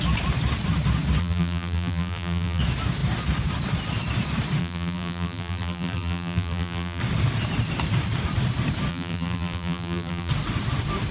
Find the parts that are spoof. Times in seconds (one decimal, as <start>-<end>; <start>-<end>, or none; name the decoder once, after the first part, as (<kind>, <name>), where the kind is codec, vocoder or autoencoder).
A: 1.2-2.6 (vocoder, BigVGAN v2); 4.6-7.0; 8.9-10.3